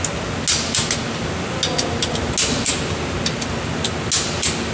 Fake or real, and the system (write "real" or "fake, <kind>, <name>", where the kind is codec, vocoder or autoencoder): real